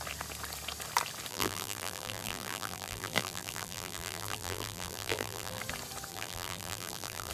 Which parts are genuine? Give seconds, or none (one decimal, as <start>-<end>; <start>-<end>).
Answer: 0.0-1.3; 5.6-6.1